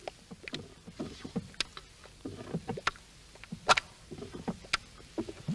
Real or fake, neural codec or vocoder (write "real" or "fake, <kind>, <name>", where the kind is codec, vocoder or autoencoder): real